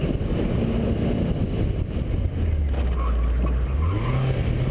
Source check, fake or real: real